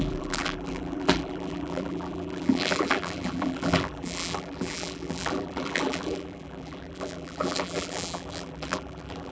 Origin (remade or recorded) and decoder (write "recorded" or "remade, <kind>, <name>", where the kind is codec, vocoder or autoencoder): remade, vocoder, BigVGAN v2